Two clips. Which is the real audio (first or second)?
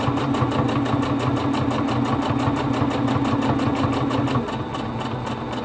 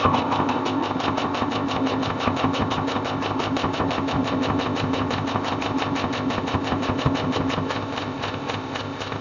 first